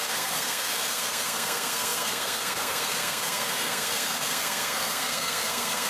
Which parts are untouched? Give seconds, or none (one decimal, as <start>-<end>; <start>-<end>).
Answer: none